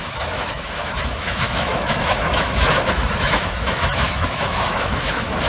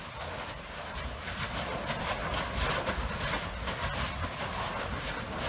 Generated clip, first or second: first